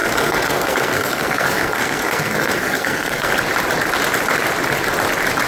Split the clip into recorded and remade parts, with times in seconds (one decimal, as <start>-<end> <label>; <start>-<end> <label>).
0.0-3.3 remade; 3.3-5.5 recorded